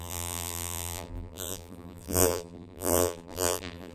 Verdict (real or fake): fake